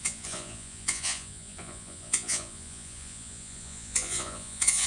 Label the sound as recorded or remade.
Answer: remade